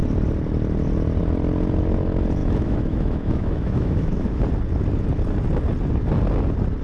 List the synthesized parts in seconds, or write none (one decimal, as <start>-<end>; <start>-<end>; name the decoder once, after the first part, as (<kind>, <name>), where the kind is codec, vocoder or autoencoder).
2.4-4.4 (autoencoder, DAC-VAE)